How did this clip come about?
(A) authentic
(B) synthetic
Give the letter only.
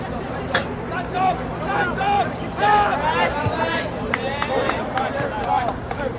B